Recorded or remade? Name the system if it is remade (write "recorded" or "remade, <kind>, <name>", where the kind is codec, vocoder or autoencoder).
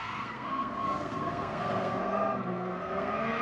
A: remade, codec, SNAC